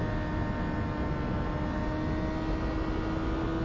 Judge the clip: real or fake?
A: real